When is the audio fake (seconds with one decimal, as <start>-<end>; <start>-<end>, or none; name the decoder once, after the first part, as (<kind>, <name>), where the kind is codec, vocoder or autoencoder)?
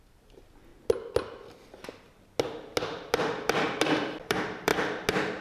0.0-0.7 (vocoder, BigVGAN v2); 3.9-4.7